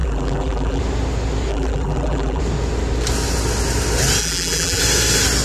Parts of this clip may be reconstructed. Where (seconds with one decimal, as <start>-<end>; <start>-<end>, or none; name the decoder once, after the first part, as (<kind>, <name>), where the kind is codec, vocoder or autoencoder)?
0.0-0.8 (vocoder, BigVGAN v2); 1.5-2.4; 4.2-4.8